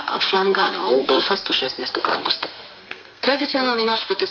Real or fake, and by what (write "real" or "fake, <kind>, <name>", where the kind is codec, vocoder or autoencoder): fake, codec, SNAC